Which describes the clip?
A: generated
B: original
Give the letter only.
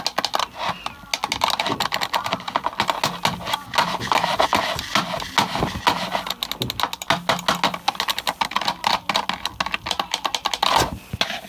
B